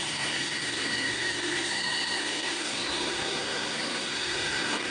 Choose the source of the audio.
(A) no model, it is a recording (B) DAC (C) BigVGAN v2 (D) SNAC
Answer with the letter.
D